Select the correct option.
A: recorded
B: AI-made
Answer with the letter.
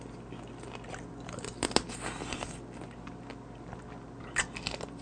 A